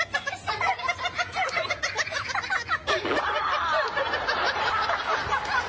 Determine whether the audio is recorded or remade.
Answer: recorded